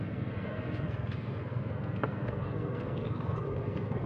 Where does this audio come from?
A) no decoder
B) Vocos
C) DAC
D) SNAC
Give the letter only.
D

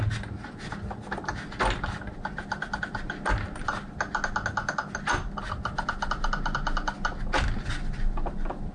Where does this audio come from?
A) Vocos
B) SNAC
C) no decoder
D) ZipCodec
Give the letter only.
C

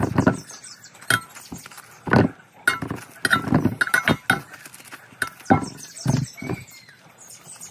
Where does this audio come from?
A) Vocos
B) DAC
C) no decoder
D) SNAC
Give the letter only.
C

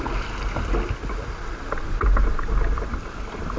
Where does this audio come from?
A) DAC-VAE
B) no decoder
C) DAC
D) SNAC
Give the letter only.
B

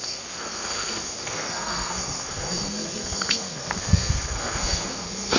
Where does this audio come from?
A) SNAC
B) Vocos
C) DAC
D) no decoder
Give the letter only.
A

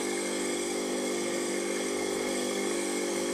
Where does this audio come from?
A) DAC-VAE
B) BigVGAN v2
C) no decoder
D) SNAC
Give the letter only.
D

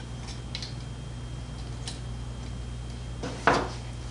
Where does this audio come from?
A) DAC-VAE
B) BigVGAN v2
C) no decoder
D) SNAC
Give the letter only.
C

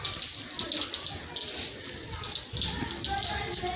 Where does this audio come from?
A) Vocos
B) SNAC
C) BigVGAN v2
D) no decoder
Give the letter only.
D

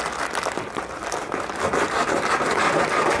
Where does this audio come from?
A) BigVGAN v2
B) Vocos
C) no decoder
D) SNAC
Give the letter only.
C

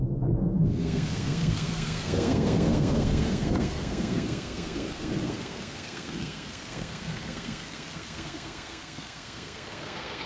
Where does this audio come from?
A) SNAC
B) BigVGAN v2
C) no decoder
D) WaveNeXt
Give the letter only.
A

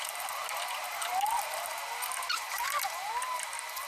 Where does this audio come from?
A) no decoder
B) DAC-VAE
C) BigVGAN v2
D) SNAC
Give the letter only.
A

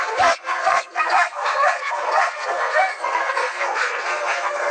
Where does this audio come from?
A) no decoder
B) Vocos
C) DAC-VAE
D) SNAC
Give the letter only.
D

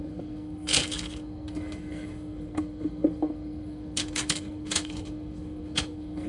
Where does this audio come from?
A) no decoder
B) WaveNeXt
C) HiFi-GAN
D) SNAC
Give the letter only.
D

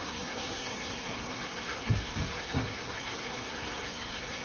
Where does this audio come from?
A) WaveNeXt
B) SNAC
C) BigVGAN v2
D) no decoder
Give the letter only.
B